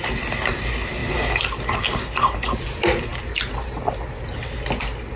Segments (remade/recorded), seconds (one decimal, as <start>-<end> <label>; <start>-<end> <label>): 0.0-5.2 recorded